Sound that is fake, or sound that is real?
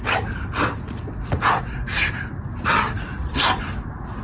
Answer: real